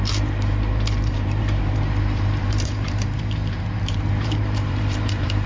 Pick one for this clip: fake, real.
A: fake